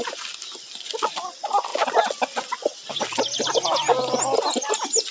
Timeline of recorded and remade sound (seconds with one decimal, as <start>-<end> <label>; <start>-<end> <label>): 0.0-5.1 recorded

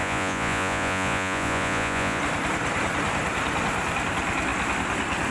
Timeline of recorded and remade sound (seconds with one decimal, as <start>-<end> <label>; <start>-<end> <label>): 0.0-2.2 remade; 2.2-5.3 recorded

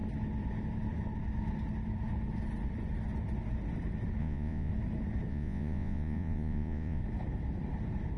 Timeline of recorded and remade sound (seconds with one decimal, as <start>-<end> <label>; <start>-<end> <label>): 0.0-4.2 recorded; 4.2-4.7 remade; 4.7-5.3 recorded; 5.3-7.0 remade; 7.0-8.2 recorded

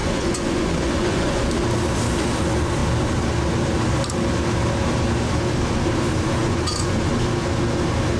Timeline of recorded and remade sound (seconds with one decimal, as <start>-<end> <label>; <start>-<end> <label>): 0.0-1.4 remade; 1.4-6.4 recorded; 6.4-7.1 remade; 7.1-8.2 recorded

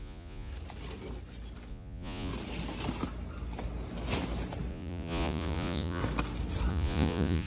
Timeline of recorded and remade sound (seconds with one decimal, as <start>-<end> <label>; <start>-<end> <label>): 0.0-0.5 remade; 0.5-1.7 recorded; 1.7-2.3 remade; 2.3-4.7 recorded; 4.7-6.0 remade; 6.0-6.7 recorded; 6.7-7.5 remade

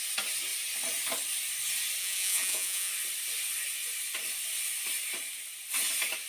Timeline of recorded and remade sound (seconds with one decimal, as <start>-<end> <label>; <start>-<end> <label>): 0.0-2.0 recorded; 2.0-2.9 remade; 2.9-6.3 recorded